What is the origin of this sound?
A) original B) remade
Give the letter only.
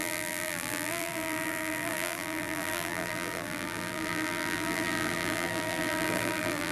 B